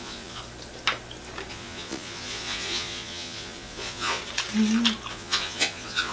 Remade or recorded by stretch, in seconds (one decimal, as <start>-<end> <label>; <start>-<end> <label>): 0.0-0.4 remade; 0.4-1.5 recorded; 1.5-4.2 remade; 4.2-5.1 recorded; 5.1-6.1 remade